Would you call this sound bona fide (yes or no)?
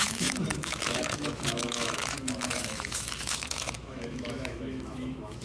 no